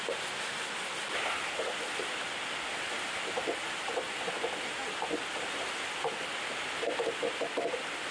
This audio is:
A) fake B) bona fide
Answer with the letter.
B